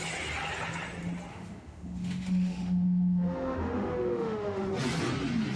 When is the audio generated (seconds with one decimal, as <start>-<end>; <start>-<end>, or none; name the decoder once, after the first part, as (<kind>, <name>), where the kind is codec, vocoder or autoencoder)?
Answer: 1.3-4.7 (autoencoder, DAC-VAE)